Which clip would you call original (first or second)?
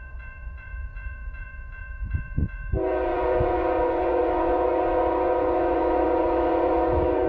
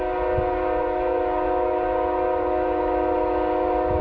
second